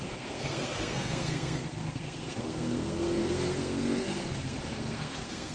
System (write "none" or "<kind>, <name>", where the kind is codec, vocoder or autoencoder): codec, SNAC